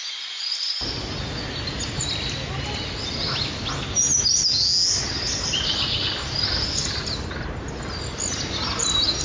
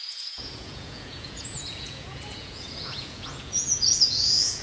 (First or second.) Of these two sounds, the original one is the first